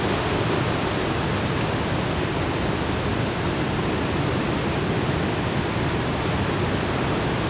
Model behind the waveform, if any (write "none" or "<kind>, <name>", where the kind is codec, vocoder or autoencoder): none